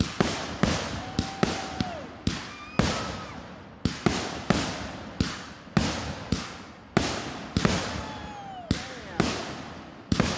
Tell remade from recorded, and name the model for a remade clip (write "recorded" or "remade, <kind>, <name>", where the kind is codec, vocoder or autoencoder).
recorded